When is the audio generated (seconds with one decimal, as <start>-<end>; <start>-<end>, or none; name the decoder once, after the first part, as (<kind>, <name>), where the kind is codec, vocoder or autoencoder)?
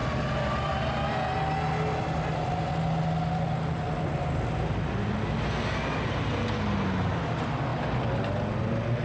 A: none